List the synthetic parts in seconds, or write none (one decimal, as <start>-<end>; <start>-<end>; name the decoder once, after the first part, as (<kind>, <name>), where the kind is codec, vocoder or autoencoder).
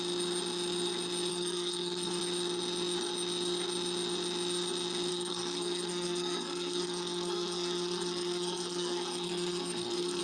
1.3-2.2 (codec, SNAC); 5.1-10.2